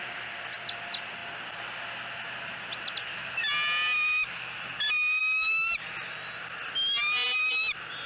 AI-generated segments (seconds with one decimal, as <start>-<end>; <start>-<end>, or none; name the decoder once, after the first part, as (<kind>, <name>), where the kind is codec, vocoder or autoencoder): 5.2-6.4 (vocoder, BigVGAN v2)